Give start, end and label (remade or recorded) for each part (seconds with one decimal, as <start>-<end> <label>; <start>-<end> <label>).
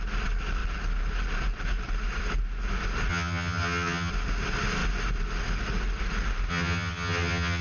0.0-3.1 recorded; 3.1-4.1 remade; 4.1-6.5 recorded; 6.5-7.6 remade